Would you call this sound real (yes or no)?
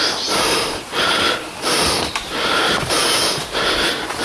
yes